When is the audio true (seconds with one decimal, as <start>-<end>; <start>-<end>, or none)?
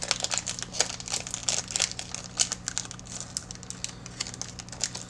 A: 0.0-5.1